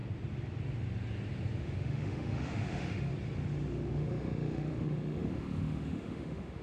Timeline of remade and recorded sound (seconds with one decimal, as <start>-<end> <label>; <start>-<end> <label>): 0.0-1.6 recorded; 1.6-3.1 remade; 3.1-3.7 recorded; 3.7-6.6 remade